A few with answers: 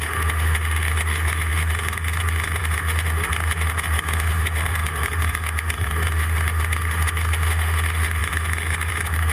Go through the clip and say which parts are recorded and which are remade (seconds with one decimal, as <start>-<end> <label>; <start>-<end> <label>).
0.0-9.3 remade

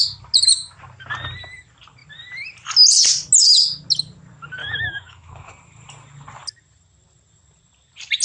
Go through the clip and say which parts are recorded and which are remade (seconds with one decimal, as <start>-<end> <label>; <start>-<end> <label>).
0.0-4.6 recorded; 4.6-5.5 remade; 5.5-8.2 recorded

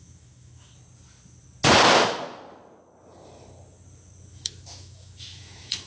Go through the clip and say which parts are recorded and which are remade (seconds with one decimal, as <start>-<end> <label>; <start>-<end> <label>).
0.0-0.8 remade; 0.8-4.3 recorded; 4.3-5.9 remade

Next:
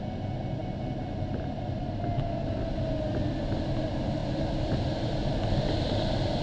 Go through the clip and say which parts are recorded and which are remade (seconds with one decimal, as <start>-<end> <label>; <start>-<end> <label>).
0.0-6.4 recorded

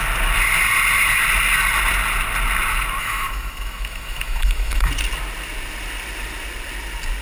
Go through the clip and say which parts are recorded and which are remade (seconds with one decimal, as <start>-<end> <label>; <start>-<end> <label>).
0.0-3.0 recorded; 3.0-4.9 remade; 4.9-7.2 recorded

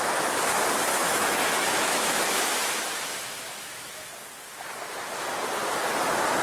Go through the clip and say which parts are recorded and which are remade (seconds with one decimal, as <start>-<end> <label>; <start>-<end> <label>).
0.0-0.9 recorded; 0.9-4.1 remade; 4.1-6.4 recorded